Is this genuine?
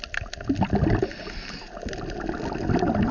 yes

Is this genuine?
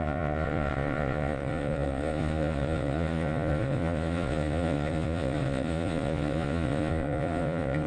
no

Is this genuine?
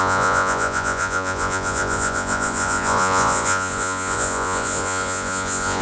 no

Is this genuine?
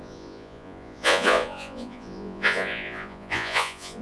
no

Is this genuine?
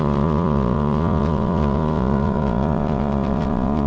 no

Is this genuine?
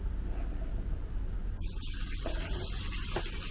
yes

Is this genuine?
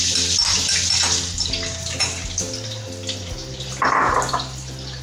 yes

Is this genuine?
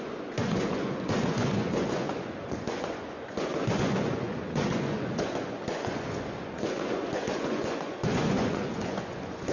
no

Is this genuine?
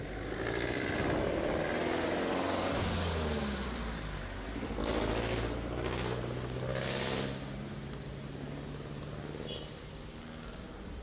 yes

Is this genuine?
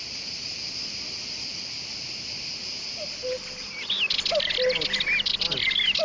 yes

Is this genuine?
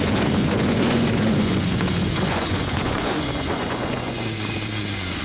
no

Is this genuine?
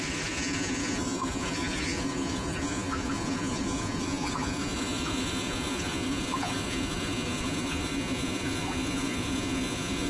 no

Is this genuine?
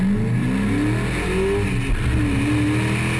yes